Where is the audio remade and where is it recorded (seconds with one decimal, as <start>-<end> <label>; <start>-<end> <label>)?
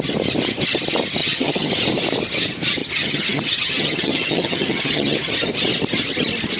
0.0-1.2 recorded; 1.2-1.7 remade; 1.7-2.8 recorded; 2.8-5.3 remade; 5.3-6.6 recorded